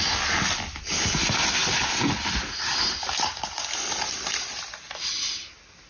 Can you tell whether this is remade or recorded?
recorded